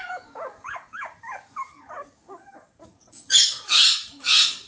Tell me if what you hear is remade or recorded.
remade